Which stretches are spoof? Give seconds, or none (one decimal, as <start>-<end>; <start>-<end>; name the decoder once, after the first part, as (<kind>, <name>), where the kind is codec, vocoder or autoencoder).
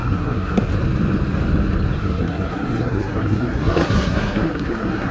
0.0-0.7 (codec, SNAC); 2.0-5.1